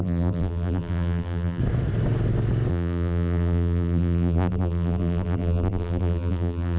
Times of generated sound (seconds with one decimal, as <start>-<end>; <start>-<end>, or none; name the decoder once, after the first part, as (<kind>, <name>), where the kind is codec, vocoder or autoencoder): 0.0-1.6 (vocoder, BigVGAN v2); 2.7-6.8